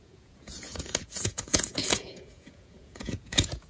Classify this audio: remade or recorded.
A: remade